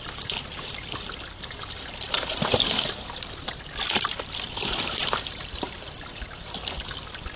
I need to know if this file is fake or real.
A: fake